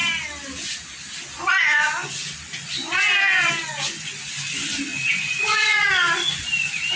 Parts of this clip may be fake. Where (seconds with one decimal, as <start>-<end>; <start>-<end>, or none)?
4.9-5.9